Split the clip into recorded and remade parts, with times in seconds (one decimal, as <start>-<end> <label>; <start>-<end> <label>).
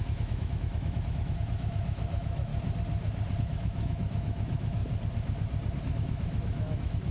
0.0-2.5 remade; 2.5-3.4 recorded; 3.4-4.8 remade; 4.8-5.8 recorded; 5.8-7.1 remade